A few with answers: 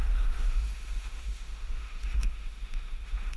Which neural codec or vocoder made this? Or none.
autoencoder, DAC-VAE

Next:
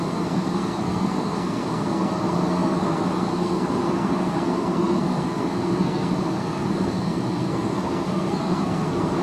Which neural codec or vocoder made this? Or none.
codec, SNAC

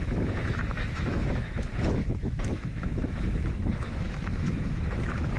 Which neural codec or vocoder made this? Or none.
autoencoder, DAC-VAE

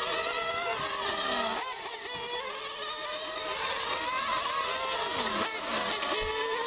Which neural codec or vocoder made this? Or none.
none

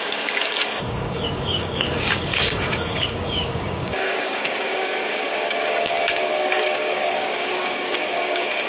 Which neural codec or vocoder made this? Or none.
codec, DAC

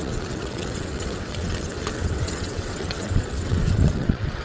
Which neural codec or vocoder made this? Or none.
vocoder, WaveNeXt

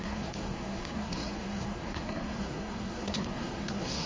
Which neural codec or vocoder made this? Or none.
codec, SNAC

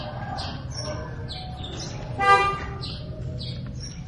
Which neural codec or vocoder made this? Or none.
none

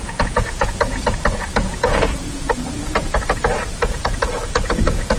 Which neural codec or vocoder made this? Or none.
vocoder, Vocos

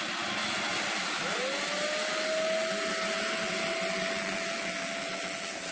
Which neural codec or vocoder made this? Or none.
none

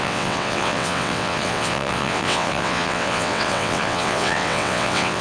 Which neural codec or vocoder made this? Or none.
vocoder, WaveNeXt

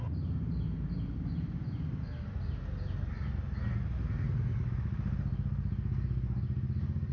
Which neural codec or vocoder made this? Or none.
none